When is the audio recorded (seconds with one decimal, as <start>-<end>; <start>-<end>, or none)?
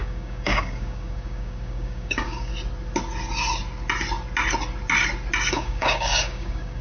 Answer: 2.5-5.5